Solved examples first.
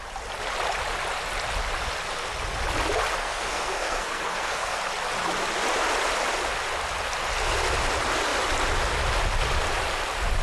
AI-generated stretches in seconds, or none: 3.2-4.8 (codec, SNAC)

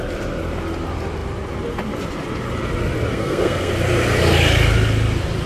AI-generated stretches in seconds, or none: 3.1-3.7 (codec, SNAC)

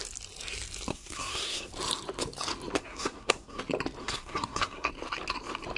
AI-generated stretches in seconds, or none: 0.9-1.7 (codec, SNAC); 2.8-3.6; 4.0-4.9

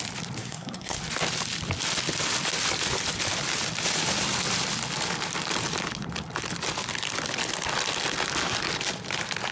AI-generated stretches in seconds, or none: 0.4-1.0 (codec, SNAC)

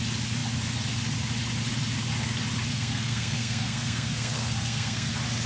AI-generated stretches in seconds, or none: 2.7-5.1 (codec, SNAC)

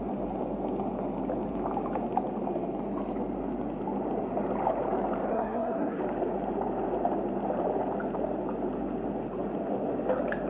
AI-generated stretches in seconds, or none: 5.3-6.0 (codec, SNAC)

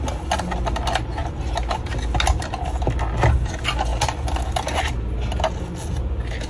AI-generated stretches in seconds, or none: none

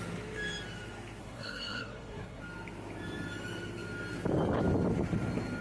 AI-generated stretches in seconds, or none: 1.2-2.4 (codec, SNAC)